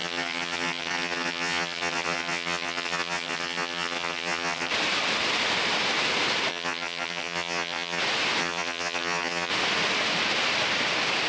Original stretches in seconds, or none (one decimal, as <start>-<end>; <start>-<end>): 4.7-6.5; 8.0-8.4; 9.5-11.3